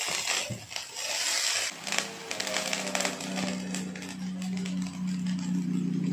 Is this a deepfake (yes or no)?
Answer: no